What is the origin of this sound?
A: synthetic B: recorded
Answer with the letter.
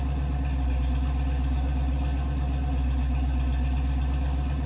B